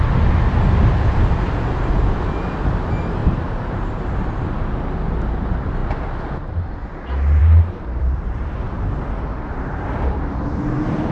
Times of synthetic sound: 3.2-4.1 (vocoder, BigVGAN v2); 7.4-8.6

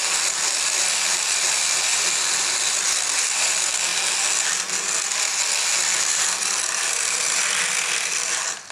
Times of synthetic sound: 0.0-3.9 (vocoder, BigVGAN v2); 6.0-8.7

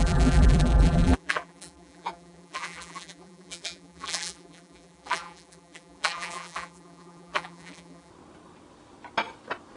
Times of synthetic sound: 0.0-8.1 (vocoder, BigVGAN v2)

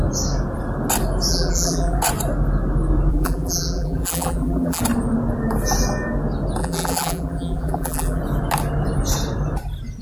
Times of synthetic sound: 1.3-2.0 (vocoder, BigVGAN v2); 3.1-4.8; 6.6-8.2

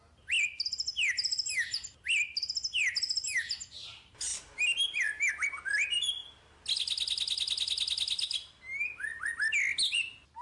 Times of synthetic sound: none

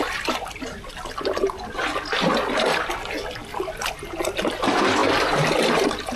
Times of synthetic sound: none